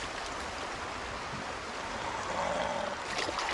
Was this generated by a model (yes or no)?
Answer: no